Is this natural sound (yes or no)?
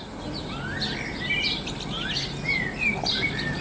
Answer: yes